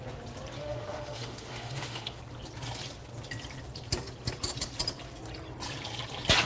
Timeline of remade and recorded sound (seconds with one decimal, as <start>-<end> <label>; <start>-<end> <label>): 0.0-0.6 recorded; 0.6-2.2 remade; 2.2-6.5 recorded